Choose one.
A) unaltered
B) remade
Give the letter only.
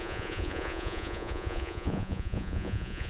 B